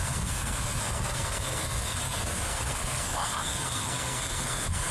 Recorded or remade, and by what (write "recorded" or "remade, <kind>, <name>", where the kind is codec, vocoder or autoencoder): remade, codec, SNAC